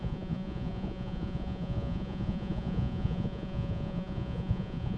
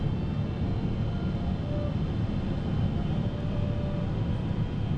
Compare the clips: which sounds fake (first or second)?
first